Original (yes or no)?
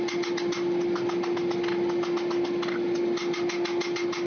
yes